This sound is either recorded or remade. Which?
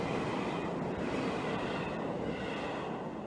recorded